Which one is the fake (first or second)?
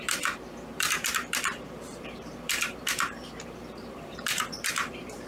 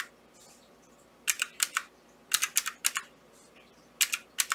first